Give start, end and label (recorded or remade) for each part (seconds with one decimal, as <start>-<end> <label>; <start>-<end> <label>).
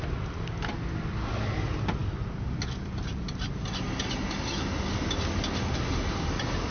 0.0-6.7 recorded